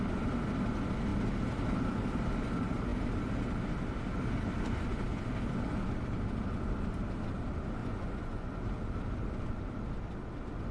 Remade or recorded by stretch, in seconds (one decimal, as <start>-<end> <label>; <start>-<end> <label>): 0.0-7.8 recorded; 7.8-8.6 remade; 8.6-10.7 recorded